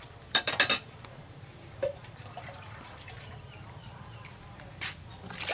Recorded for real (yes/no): no